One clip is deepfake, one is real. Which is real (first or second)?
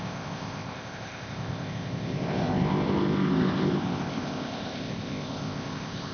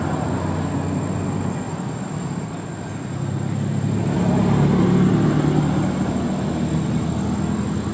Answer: second